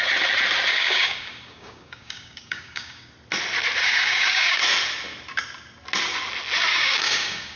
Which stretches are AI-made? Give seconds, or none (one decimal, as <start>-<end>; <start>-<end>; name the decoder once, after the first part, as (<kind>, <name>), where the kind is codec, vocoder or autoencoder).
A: 0.7-3.1 (codec, DAC); 3.8-4.6; 6.7-7.6